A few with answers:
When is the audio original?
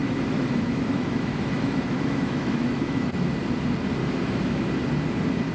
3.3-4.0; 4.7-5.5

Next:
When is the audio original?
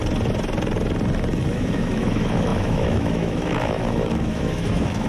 0.0-1.5